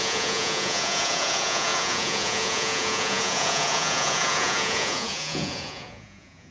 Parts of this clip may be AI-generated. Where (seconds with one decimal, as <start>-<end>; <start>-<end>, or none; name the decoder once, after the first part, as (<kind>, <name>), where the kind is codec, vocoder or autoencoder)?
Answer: 0.0-6.5 (vocoder, Vocos)